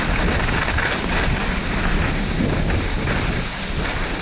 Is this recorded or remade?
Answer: recorded